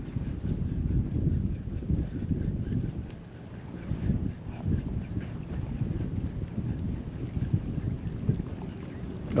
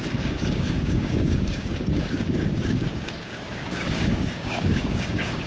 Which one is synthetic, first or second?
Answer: second